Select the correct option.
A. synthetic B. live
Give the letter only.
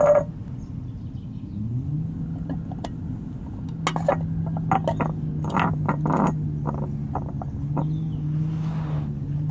B